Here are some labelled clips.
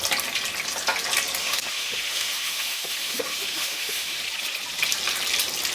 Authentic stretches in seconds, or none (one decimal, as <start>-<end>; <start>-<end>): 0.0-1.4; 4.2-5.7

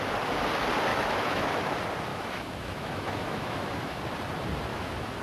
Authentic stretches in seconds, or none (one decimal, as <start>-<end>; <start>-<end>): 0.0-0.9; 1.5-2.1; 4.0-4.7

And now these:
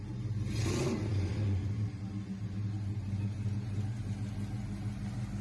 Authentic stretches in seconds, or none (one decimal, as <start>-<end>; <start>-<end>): 0.0-5.4

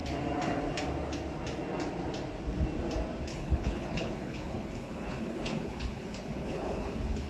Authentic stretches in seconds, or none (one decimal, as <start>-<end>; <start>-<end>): 0.0-3.3

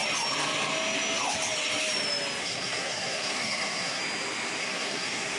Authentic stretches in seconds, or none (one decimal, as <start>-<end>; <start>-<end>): 0.0-2.4; 4.0-4.6

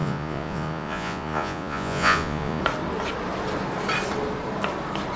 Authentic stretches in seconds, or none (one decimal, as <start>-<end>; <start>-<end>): 2.6-5.2

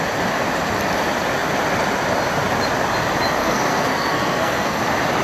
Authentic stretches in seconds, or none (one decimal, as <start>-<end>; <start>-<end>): 0.0-3.4; 4.8-5.2